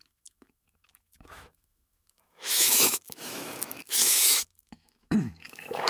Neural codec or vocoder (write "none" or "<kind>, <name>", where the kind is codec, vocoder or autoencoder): autoencoder, DAC-VAE